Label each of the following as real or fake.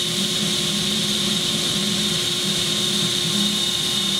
fake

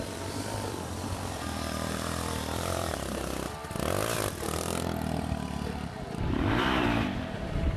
fake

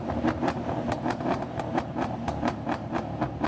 fake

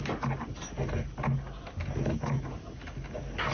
real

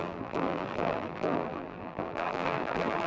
fake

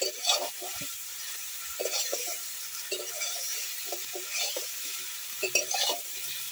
fake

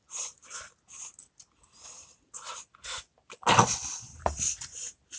real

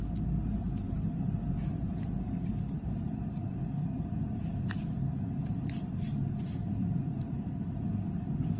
fake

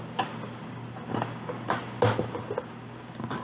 real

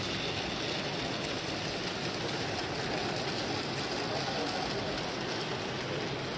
real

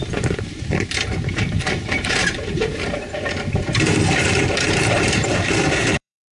fake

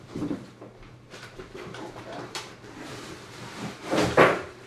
fake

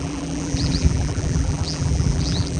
fake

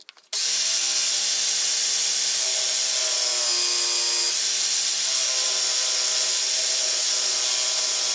real